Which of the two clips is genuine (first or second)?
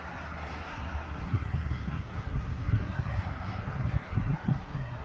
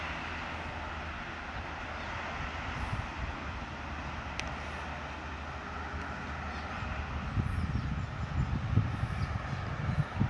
second